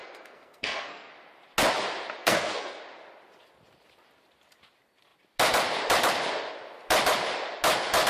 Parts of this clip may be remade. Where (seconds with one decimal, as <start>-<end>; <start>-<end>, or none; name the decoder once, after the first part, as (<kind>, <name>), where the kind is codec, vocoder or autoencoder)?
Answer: 0.0-1.1 (codec, SNAC); 2.2-2.8